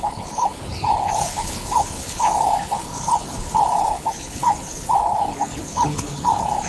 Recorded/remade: remade